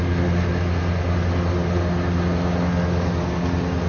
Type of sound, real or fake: real